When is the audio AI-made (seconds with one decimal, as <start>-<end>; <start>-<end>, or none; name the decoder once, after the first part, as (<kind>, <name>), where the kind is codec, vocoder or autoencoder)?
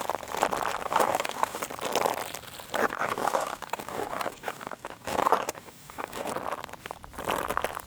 0.8-1.6 (codec, DAC); 2.8-6.3